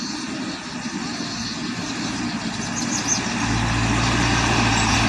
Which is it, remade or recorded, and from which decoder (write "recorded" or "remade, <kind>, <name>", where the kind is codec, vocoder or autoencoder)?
recorded